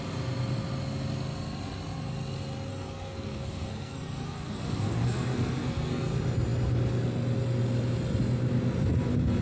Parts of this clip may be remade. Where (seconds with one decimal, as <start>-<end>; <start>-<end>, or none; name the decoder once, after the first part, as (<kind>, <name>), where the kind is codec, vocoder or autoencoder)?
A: 2.7-6.1 (codec, SNAC)